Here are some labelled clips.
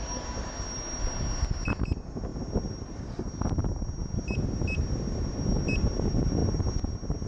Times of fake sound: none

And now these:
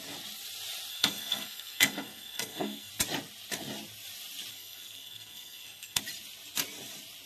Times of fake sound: 0.9-2.9; 4.5-6.0

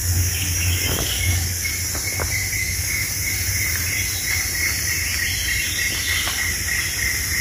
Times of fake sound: 0.0-1.7; 2.6-3.1

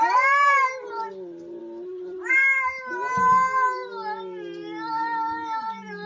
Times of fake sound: none

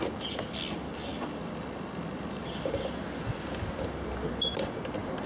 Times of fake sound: none